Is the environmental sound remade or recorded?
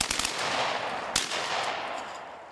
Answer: recorded